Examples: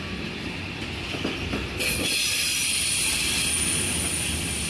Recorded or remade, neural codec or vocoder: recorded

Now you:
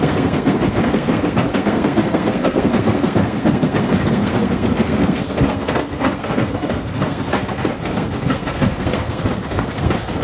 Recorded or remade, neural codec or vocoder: remade, codec, SNAC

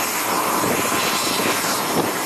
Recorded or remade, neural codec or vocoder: recorded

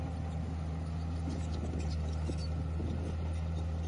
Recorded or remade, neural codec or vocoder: recorded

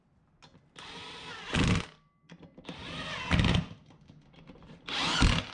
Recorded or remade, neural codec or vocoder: recorded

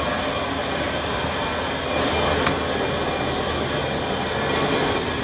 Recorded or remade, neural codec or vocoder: recorded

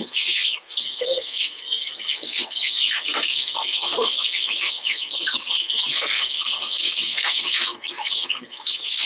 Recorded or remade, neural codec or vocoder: remade, codec, SNAC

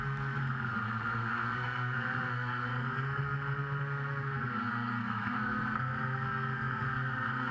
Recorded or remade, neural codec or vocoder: remade, codec, SNAC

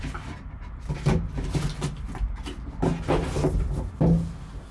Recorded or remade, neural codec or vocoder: recorded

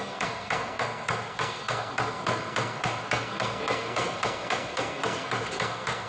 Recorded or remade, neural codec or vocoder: remade, codec, SNAC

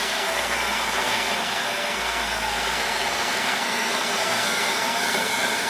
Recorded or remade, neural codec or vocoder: remade, codec, SNAC